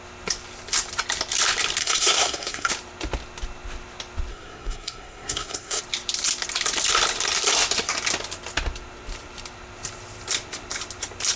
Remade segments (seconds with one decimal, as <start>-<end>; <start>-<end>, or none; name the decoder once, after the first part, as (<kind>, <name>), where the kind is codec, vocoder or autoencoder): 1.8-2.7 (codec, SNAC); 4.3-5.8